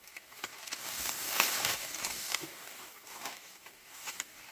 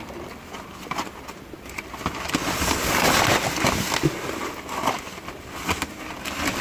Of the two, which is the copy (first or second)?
first